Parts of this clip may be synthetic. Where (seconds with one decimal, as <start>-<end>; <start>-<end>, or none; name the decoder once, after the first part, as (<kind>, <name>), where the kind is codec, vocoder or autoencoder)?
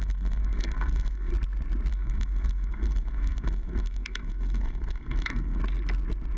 0.0-1.3 (codec, SNAC); 1.9-5.6